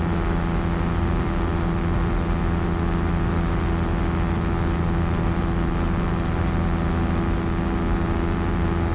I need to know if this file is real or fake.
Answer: real